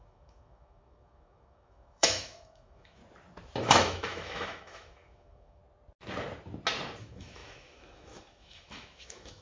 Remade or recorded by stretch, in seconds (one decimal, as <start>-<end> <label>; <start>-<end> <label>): 0.0-3.0 remade; 3.0-3.6 recorded; 3.6-5.6 remade; 5.6-7.0 recorded; 7.0-9.4 remade